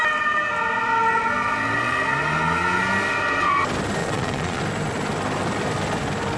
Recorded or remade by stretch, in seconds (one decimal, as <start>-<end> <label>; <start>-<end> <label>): 0.0-4.0 recorded; 4.0-4.6 remade; 4.6-6.4 recorded